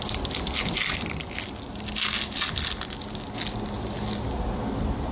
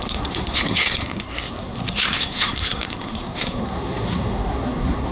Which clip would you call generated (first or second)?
second